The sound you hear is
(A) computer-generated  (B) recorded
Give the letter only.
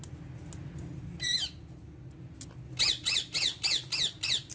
B